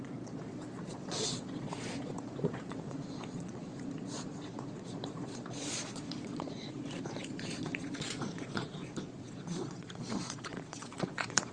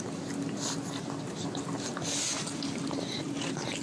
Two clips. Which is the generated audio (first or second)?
first